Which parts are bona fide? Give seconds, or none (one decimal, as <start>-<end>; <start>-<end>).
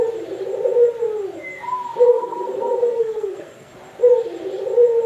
0.0-2.1; 3.7-5.1